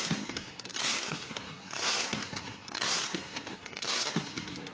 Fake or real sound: fake